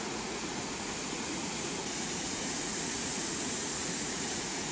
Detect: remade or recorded remade